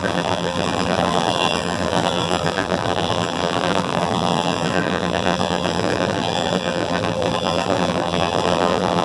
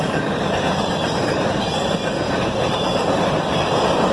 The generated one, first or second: first